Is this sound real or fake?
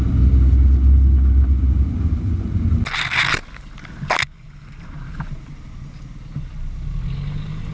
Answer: real